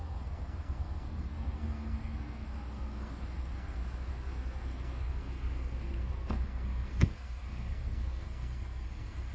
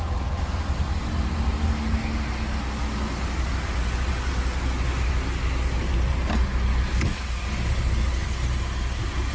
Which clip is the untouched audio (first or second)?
second